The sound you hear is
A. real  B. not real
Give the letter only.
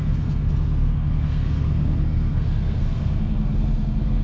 B